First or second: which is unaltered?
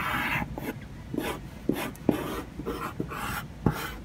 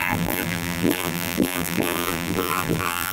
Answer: first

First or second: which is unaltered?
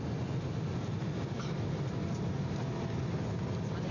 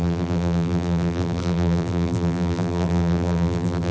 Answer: first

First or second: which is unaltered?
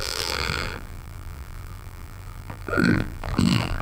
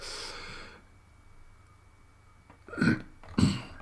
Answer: second